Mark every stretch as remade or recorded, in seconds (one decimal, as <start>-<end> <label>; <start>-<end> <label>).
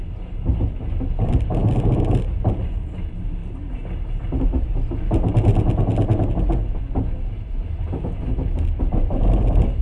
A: 0.0-9.8 recorded